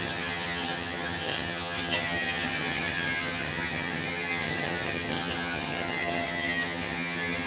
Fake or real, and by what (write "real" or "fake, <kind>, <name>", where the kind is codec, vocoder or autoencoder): fake, vocoder, HiFi-GAN